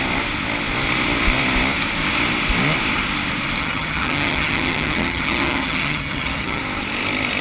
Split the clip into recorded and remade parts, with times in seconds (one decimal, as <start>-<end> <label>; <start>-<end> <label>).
0.0-3.6 recorded; 3.6-6.6 remade; 6.6-7.4 recorded